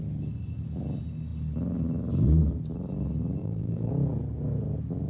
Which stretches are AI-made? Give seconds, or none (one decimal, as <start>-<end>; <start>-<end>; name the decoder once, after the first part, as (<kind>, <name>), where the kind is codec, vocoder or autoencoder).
3.4-3.9 (vocoder, BigVGAN v2)